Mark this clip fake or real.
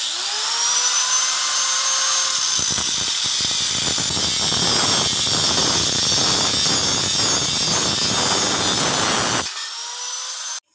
real